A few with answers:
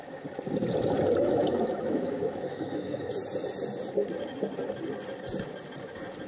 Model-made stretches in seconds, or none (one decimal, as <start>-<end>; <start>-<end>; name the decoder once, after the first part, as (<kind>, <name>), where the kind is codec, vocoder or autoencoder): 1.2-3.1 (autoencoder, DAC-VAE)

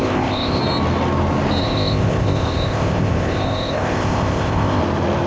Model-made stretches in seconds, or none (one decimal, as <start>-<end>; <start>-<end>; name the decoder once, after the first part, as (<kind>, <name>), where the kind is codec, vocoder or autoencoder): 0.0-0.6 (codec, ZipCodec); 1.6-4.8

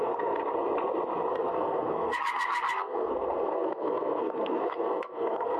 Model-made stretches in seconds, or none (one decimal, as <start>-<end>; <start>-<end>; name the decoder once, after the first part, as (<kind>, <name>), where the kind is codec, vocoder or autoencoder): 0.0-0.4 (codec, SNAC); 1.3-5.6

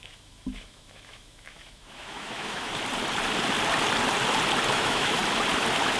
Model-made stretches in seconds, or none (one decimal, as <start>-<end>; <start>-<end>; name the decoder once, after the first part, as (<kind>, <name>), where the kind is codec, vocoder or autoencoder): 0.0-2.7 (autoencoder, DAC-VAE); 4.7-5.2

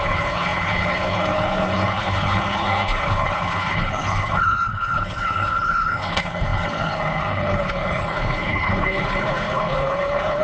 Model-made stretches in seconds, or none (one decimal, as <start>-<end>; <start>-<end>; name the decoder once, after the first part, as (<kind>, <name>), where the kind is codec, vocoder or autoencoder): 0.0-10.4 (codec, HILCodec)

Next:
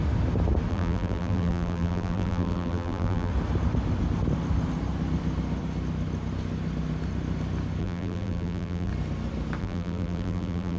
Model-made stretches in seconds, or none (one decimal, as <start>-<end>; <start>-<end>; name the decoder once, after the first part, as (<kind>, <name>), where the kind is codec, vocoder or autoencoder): 0.7-3.3 (vocoder, BigVGAN v2); 7.8-8.9; 9.6-10.8

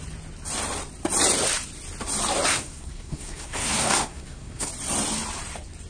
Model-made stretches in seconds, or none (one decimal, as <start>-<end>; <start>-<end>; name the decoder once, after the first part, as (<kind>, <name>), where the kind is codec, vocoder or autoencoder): 2.5-4.7 (codec, SNAC)